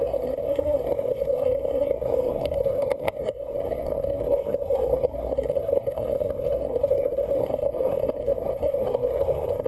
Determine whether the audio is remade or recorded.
remade